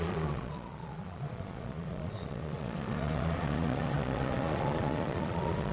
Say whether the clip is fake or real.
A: fake